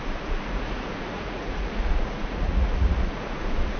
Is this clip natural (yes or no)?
no